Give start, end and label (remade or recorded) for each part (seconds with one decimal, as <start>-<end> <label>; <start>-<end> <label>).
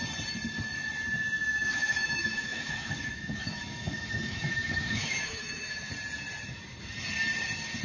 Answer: 0.0-1.4 recorded; 1.4-5.9 remade; 5.9-7.8 recorded